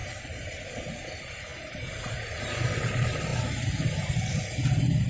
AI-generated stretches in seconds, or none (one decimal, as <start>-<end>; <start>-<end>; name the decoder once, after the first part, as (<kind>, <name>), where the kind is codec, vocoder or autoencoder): 0.0-1.1 (vocoder, BigVGAN v2)

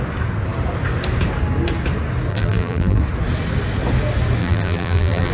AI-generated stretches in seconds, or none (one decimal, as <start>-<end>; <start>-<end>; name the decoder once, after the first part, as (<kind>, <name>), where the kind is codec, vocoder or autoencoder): 2.3-3.0 (vocoder, BigVGAN v2); 4.4-5.3